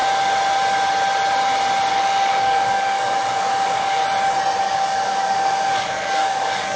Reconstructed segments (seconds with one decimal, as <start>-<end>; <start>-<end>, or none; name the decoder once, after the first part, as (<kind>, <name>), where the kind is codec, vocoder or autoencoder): 1.9-4.0 (codec, DAC); 4.6-6.8